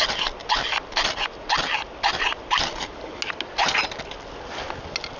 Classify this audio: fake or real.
real